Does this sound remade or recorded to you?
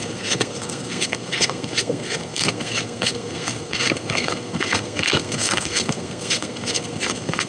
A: remade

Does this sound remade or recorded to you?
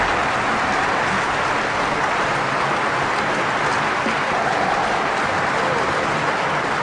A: recorded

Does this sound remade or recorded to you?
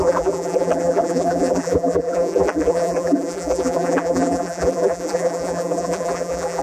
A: remade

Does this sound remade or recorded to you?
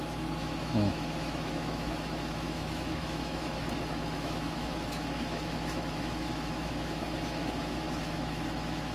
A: remade